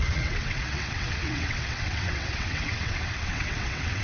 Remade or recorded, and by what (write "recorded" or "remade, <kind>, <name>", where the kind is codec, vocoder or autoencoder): remade, vocoder, WaveNeXt